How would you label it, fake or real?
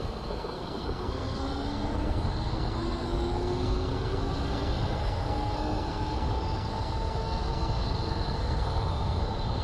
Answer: fake